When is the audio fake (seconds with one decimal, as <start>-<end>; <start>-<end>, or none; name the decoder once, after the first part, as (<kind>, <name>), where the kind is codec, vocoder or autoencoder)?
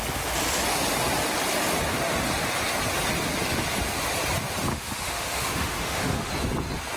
4.7-6.3 (autoencoder, DAC-VAE)